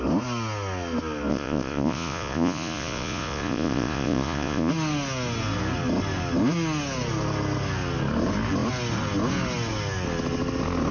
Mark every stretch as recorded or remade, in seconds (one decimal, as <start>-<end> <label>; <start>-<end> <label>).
0.0-1.3 recorded; 1.3-4.7 remade; 4.7-10.9 recorded